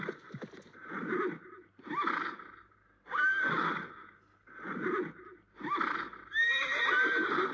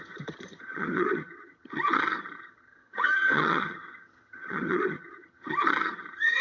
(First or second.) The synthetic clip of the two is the second